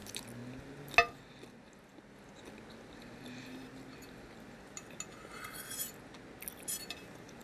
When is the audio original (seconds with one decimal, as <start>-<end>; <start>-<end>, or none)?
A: 0.0-7.4